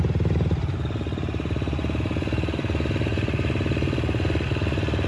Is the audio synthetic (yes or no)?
no